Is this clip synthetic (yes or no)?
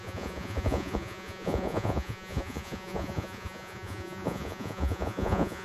yes